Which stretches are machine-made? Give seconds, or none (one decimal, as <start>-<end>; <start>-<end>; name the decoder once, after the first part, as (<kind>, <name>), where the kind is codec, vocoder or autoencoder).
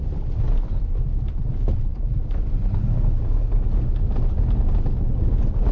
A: none